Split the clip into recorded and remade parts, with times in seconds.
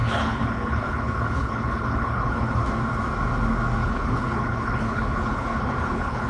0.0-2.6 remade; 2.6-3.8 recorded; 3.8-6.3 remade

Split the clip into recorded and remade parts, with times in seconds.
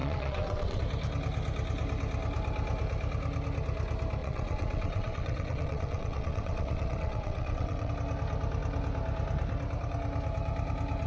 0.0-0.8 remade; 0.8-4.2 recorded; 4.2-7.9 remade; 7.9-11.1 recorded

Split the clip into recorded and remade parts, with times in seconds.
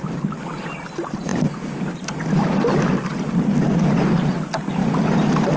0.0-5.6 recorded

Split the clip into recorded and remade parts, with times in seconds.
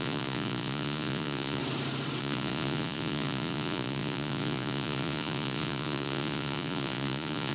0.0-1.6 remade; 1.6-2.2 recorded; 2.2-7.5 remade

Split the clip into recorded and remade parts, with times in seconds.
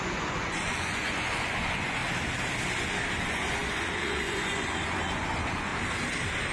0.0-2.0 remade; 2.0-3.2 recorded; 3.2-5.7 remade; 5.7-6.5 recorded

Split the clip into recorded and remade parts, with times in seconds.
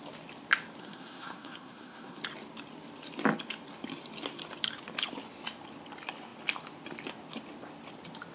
0.0-0.8 recorded; 0.8-2.2 remade; 2.2-8.3 recorded